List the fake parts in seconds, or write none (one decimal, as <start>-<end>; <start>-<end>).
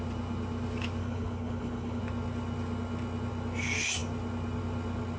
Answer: 1.0-2.0